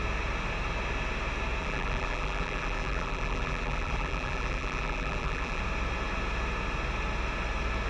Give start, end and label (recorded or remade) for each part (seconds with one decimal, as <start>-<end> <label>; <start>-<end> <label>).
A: 0.0-1.6 recorded; 1.6-5.6 remade; 5.6-7.9 recorded